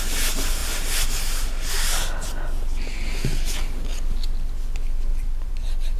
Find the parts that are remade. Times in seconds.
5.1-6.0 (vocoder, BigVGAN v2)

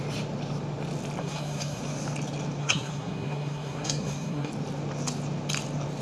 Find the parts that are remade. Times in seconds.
1.2-1.8 (codec, SNAC); 2.6-4.5